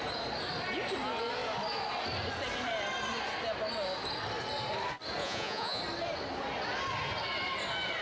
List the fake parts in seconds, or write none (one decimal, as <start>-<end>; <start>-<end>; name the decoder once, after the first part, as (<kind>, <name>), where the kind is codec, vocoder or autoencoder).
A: 5.2-5.8 (vocoder, Vocos)